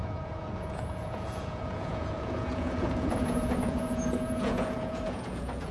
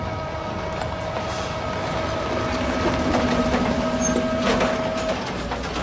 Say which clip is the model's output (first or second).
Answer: first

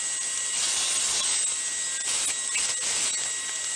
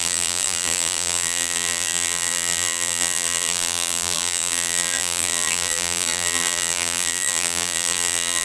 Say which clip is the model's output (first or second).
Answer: second